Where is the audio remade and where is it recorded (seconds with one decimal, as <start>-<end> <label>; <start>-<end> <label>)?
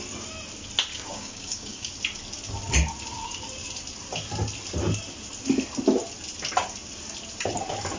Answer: 0.0-0.9 recorded; 0.9-1.9 remade; 1.9-8.0 recorded